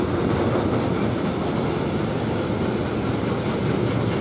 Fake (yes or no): no